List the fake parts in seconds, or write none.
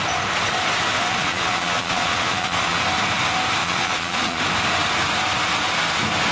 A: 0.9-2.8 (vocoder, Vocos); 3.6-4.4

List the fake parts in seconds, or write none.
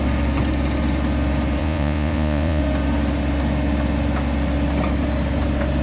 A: 1.6-2.6 (vocoder, Vocos)